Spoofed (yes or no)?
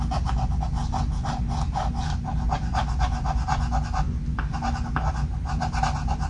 no